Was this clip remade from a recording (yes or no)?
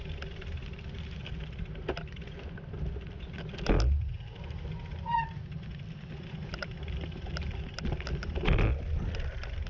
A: no